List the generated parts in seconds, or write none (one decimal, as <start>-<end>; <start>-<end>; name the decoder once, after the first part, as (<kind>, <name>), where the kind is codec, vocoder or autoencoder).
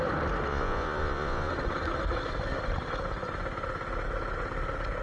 0.5-1.5 (vocoder, Vocos)